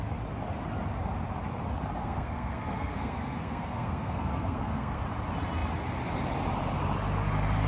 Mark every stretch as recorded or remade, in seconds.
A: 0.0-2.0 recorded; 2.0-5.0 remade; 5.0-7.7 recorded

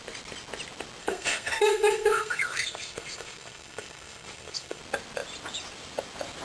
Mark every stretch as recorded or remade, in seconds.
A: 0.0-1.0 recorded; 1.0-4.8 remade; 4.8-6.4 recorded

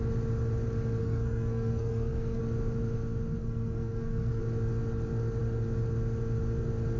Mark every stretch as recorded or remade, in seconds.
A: 0.0-1.0 recorded; 1.0-2.4 remade; 2.4-3.4 recorded; 3.4-4.4 remade; 4.4-7.0 recorded

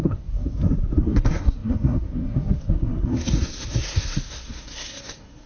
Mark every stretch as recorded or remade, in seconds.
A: 0.0-0.5 remade; 0.5-1.0 recorded; 1.0-5.5 remade

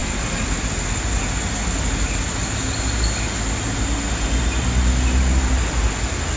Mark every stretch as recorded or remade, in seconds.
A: 0.0-6.4 recorded

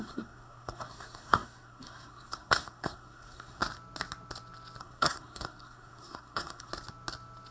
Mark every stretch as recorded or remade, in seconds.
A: 0.0-3.6 remade; 3.6-4.8 recorded; 4.8-6.7 remade; 6.7-7.5 recorded

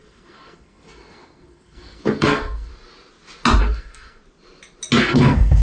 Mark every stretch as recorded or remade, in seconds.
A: 0.0-2.7 remade; 2.7-3.6 recorded; 3.6-4.2 remade; 4.2-5.0 recorded; 5.0-5.6 remade